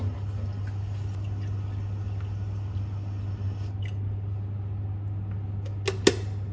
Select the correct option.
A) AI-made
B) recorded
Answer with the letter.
B